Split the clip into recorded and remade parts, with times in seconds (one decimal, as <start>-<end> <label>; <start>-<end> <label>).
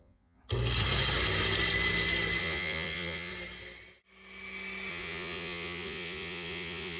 0.0-0.4 remade; 0.4-2.4 recorded; 2.4-3.3 remade; 3.3-4.9 recorded; 4.9-7.0 remade